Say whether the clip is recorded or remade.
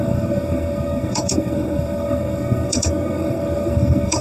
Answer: remade